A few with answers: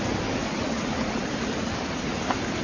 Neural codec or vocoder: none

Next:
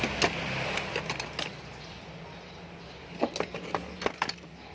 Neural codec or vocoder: none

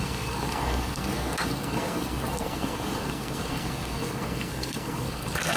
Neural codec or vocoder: codec, SNAC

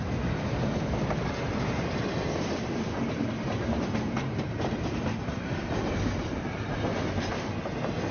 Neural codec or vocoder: none